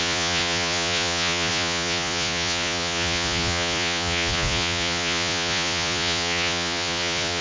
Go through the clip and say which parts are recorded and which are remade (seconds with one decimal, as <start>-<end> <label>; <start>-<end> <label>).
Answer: 0.0-7.4 remade